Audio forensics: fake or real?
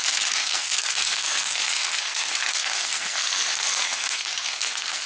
fake